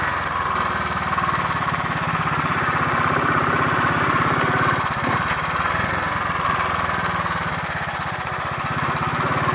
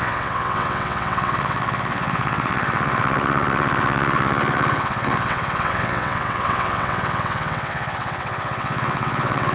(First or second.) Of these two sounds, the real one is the first